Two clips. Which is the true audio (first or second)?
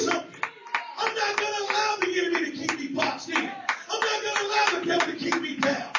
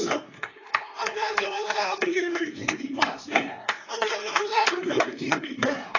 first